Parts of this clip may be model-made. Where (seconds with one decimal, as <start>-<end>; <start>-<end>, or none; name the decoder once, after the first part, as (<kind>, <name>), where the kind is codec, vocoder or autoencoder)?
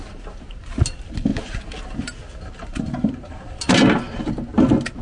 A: none